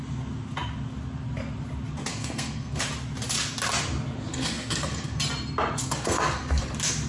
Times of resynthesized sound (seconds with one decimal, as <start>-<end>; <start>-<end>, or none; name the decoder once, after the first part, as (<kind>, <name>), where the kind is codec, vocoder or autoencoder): 2.1-2.8 (codec, SNAC); 4.3-5.2; 5.8-6.6